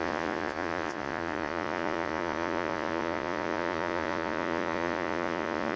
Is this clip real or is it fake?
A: fake